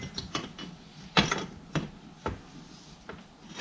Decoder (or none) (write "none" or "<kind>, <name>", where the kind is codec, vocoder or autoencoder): none